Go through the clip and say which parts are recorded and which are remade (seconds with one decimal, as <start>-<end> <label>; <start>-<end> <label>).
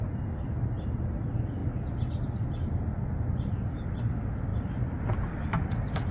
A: 0.0-4.5 recorded; 4.5-6.1 remade